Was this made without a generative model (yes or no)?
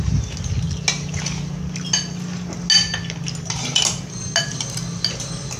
yes